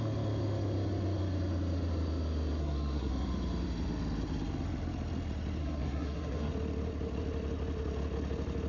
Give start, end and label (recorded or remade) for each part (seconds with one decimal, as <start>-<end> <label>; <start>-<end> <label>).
0.0-2.6 recorded; 2.6-3.1 remade; 3.1-5.6 recorded; 5.6-6.5 remade; 6.5-8.7 recorded